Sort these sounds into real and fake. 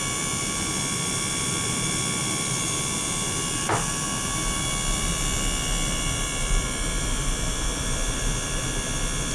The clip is fake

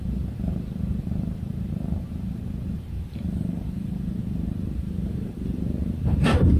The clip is fake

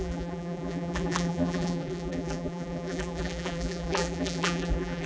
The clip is fake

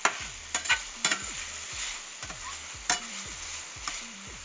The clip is real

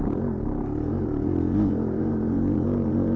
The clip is fake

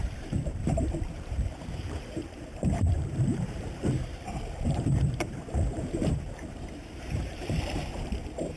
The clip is fake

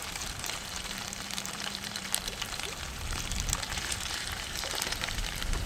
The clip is fake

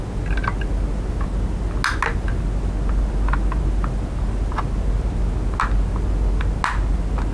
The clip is real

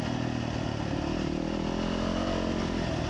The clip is real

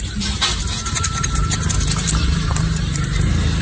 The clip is fake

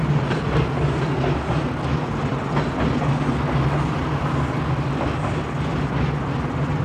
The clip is real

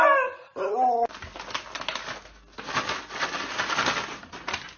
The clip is real